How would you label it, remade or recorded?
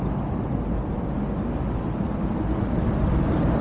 recorded